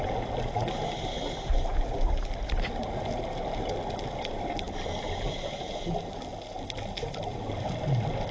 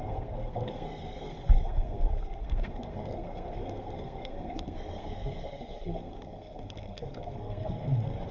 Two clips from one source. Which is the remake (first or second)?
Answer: second